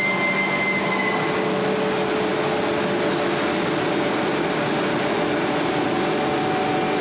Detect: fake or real real